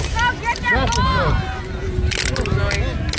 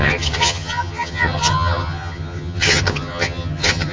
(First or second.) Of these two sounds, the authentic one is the first